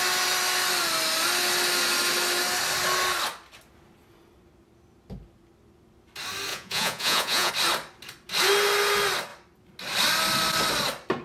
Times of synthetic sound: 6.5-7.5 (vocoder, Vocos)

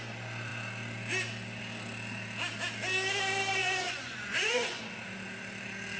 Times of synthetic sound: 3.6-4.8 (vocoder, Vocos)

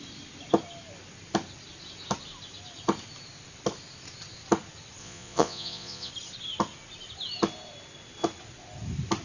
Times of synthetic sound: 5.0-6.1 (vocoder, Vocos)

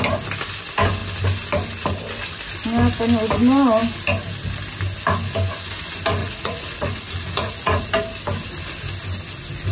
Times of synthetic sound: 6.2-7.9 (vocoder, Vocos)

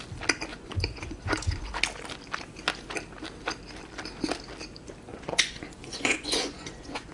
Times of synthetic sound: 0.5-1.7 (vocoder, Vocos); 5.1-7.1